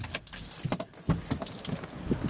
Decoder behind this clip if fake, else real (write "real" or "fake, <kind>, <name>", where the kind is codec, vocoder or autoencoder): real